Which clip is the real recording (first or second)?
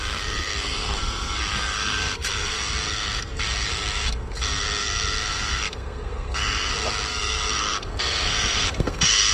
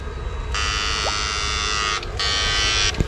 second